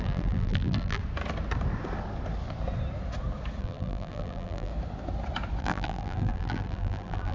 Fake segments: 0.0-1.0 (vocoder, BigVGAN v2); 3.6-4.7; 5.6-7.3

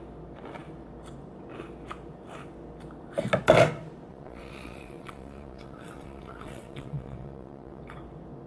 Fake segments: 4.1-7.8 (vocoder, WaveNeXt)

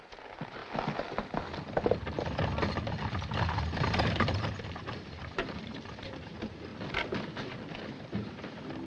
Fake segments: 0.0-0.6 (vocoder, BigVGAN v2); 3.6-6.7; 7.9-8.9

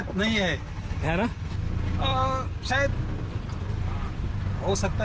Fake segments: 2.1-2.7 (vocoder, BigVGAN v2)